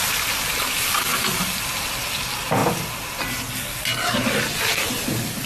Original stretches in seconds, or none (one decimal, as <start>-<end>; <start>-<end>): 0.0-5.5